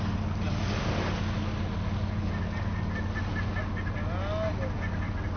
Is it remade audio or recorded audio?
recorded